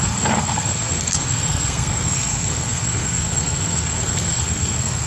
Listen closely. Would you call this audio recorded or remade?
remade